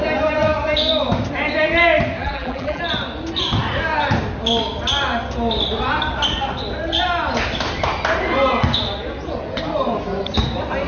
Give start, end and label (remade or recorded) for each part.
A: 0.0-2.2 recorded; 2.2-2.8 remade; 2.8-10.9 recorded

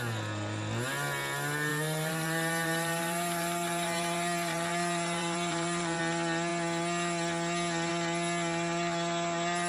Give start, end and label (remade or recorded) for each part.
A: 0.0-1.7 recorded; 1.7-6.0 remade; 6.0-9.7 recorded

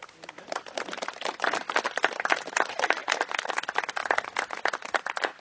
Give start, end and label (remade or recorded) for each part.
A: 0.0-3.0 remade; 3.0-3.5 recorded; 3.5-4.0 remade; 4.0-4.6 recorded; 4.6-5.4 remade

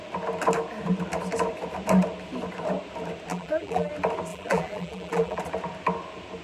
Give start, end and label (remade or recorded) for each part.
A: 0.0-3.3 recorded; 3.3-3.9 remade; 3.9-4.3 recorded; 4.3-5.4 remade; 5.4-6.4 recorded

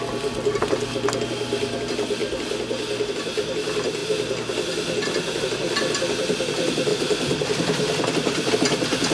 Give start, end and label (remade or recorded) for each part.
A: 0.0-6.9 recorded; 6.9-8.5 remade; 8.5-9.1 recorded

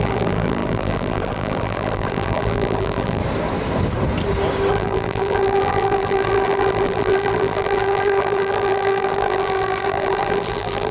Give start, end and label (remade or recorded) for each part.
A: 0.0-3.2 remade; 3.2-4.7 recorded; 4.7-10.9 remade